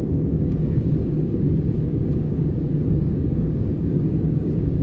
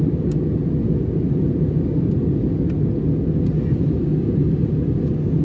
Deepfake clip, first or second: first